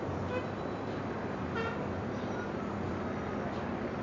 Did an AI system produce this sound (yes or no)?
no